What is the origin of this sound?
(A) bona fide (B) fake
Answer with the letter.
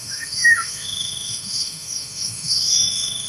B